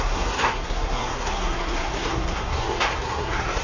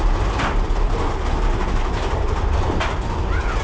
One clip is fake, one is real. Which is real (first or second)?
second